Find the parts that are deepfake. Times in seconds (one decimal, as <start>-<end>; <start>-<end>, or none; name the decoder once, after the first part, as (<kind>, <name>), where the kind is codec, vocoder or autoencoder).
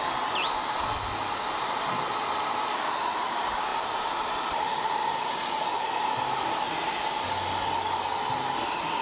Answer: 3.7-4.9 (vocoder, BigVGAN v2)